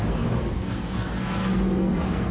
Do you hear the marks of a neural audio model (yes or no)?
yes